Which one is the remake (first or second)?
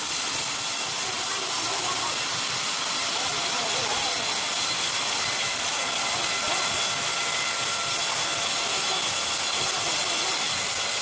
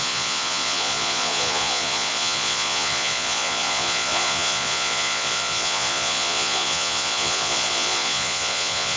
second